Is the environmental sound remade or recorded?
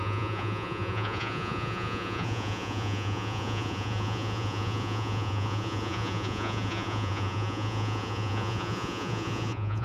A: remade